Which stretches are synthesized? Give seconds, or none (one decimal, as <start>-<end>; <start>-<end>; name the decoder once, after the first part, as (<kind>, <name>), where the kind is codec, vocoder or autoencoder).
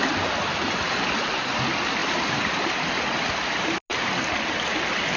2.0-3.0 (vocoder, BigVGAN v2)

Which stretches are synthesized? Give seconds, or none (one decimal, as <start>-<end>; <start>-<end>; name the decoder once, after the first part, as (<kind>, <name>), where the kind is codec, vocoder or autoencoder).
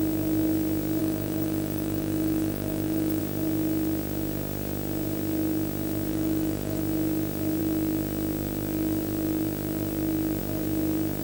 1.0-3.2 (autoencoder, DAC-VAE); 6.1-6.8